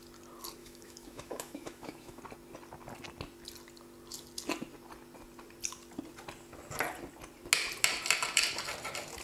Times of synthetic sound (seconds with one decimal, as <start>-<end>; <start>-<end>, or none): 0.6-2.2